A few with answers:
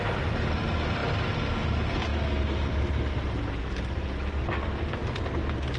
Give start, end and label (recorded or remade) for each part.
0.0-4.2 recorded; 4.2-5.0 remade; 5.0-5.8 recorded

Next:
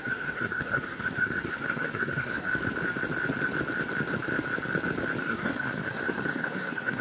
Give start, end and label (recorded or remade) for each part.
0.0-2.5 remade; 2.5-5.2 recorded; 5.2-7.0 remade

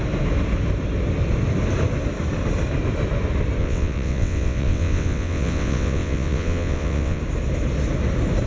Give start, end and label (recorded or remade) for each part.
0.0-3.6 recorded; 3.6-7.2 remade; 7.2-8.5 recorded

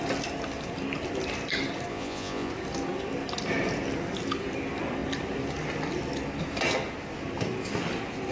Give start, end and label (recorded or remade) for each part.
0.0-1.9 recorded; 1.9-2.5 remade; 2.5-8.3 recorded

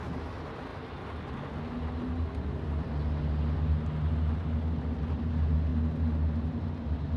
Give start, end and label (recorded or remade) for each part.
0.0-7.2 recorded

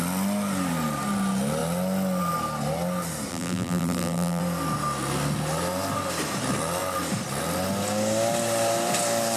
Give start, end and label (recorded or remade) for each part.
0.0-3.3 recorded; 3.3-4.4 remade; 4.4-9.4 recorded